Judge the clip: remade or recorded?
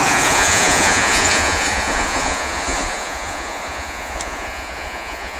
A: remade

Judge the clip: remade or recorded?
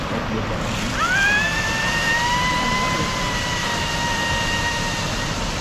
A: recorded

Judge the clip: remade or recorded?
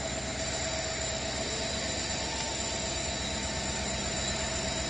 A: recorded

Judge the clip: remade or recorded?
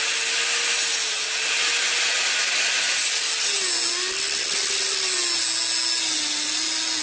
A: recorded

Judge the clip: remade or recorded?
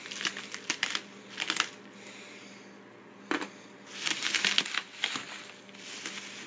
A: recorded